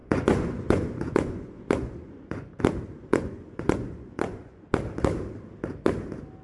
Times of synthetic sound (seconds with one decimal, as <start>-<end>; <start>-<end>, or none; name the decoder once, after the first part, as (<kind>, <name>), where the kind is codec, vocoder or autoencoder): 0.0-2.6 (vocoder, Vocos); 3.1-4.7